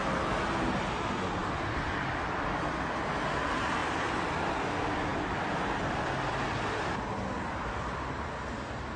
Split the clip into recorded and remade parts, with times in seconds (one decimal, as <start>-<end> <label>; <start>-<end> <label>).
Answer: 0.0-3.8 recorded; 3.8-4.5 remade; 4.5-5.1 recorded; 5.1-7.7 remade; 7.7-9.0 recorded

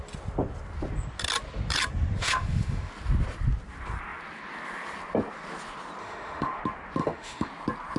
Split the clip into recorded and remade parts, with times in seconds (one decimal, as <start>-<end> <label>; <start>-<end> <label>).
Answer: 0.0-2.2 recorded; 2.2-2.9 remade; 2.9-6.0 recorded; 6.0-6.6 remade; 6.6-7.0 recorded; 7.0-7.5 remade; 7.5-8.0 recorded